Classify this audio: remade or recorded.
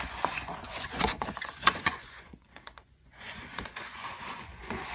remade